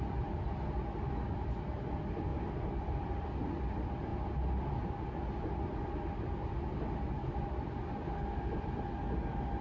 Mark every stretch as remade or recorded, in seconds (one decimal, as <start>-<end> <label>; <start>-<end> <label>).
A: 0.0-9.6 recorded